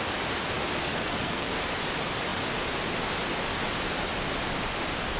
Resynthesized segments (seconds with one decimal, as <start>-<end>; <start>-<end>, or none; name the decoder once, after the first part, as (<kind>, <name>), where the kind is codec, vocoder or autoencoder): 0.8-1.5 (codec, SNAC)